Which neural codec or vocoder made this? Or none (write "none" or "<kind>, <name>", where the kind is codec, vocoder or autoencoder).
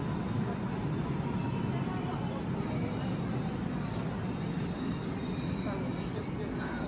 none